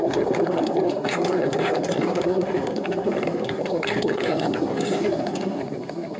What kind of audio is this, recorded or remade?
remade